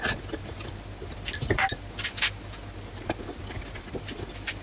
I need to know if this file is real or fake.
real